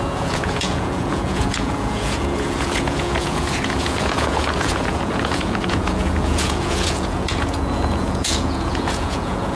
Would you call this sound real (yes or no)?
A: no